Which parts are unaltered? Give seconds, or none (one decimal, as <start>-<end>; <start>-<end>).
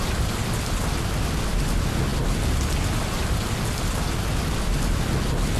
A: 0.0-5.6